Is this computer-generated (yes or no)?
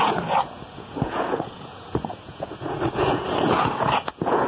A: yes